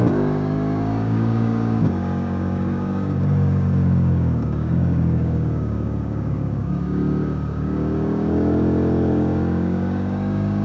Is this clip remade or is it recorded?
remade